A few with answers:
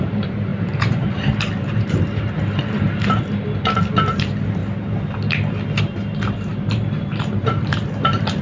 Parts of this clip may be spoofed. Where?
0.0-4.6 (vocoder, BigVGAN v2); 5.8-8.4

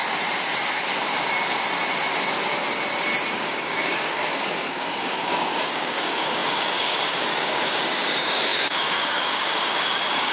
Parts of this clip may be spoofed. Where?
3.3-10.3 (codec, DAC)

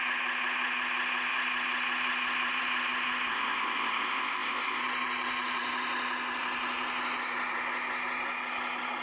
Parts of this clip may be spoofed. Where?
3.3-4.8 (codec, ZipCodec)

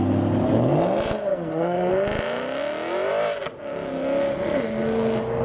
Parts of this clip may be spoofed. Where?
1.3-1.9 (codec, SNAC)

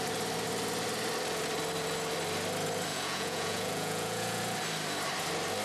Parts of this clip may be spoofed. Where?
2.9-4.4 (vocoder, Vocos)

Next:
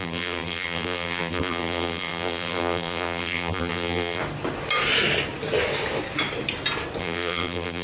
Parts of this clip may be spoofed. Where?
0.0-4.2 (vocoder, BigVGAN v2); 7.0-7.8

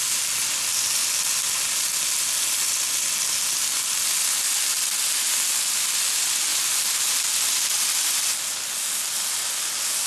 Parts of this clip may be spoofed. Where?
none

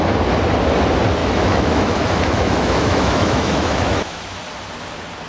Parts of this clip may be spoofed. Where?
1.2-4.4 (autoencoder, DAC-VAE)